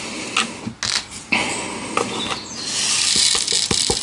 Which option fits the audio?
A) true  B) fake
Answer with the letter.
A